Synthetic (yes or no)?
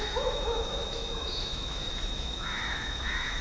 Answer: yes